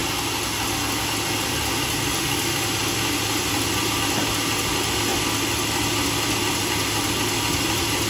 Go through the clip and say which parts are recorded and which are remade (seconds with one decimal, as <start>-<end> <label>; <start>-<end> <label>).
0.0-8.1 recorded